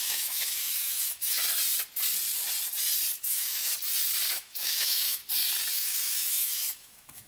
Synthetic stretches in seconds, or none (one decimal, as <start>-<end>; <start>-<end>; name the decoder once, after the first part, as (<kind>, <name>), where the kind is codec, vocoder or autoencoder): 0.0-1.4 (autoencoder, DAC-VAE); 3.2-3.7; 4.3-5.2; 5.7-7.3